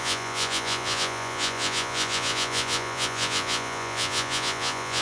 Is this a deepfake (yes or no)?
yes